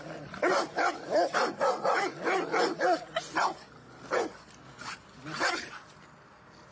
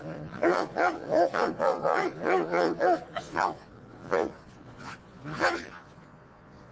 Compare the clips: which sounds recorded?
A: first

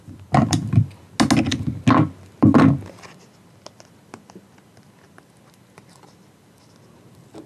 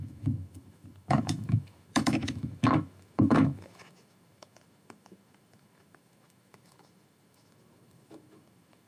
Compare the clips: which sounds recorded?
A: first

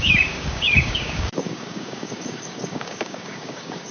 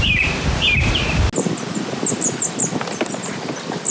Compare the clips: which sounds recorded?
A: second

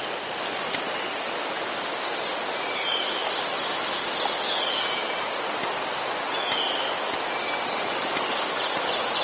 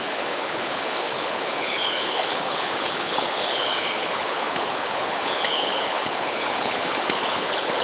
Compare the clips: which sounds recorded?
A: first